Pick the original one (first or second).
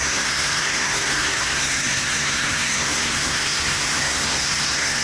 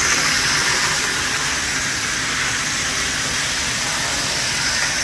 second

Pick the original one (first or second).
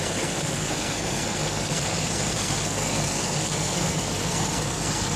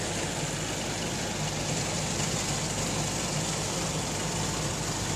second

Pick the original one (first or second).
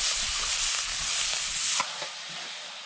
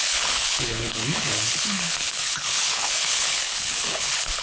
first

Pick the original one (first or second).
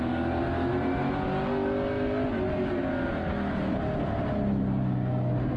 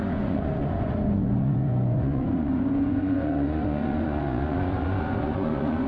first